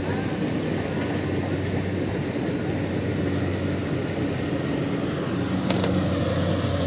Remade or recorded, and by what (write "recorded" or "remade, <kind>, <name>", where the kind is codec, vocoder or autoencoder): recorded